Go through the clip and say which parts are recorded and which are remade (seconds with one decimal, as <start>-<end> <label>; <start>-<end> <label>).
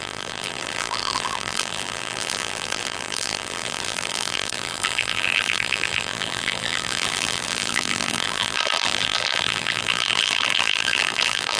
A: 0.0-11.6 remade